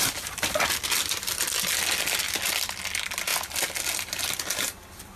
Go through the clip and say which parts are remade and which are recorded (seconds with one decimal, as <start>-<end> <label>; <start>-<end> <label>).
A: 0.0-5.2 recorded